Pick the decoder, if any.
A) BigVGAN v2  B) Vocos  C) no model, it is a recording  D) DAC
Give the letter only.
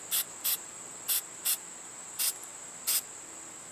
C